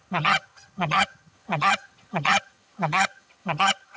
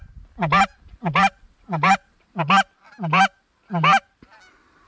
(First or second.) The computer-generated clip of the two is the first